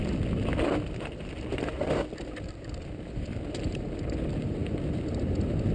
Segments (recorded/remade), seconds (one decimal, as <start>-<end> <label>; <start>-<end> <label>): 0.0-5.7 recorded